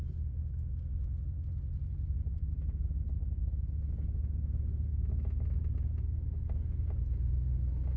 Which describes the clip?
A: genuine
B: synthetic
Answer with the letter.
A